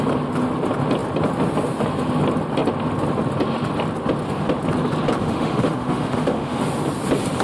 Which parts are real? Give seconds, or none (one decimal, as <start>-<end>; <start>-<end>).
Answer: 0.0-5.2; 6.6-7.4